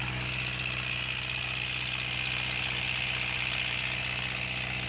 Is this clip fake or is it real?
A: real